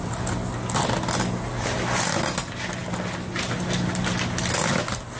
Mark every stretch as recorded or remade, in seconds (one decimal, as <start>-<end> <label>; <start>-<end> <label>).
0.0-5.2 recorded